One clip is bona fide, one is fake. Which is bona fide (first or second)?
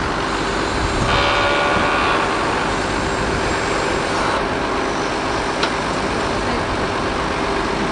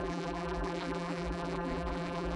first